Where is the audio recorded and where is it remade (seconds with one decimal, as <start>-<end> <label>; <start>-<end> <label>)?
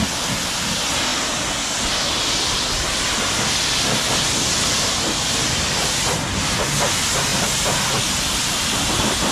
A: 0.0-9.3 recorded